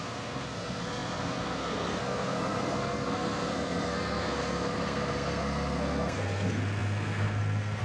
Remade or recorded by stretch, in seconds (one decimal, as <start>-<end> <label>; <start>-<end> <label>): 0.0-7.8 remade